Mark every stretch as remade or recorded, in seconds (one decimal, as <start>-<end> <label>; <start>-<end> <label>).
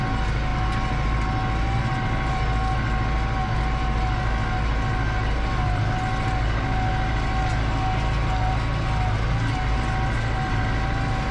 0.0-11.3 recorded